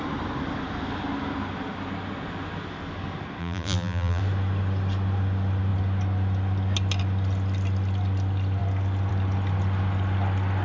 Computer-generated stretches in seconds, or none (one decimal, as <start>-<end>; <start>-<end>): 3.4-4.2